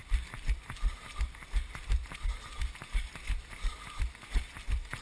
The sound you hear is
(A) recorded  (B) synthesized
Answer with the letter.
A